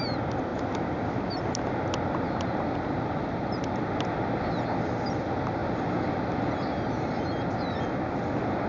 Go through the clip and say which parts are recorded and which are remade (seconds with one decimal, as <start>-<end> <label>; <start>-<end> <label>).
0.0-8.7 recorded